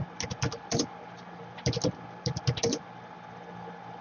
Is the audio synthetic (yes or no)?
no